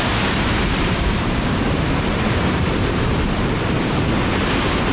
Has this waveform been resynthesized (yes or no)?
yes